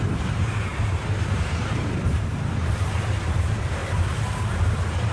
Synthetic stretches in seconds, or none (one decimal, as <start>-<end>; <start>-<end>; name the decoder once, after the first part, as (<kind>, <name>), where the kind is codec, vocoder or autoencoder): 0.0-3.8 (vocoder, BigVGAN v2); 4.5-5.1